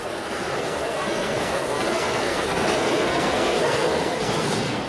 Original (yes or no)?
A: no